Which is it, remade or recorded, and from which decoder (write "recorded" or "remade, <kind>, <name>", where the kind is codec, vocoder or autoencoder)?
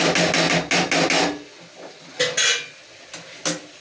recorded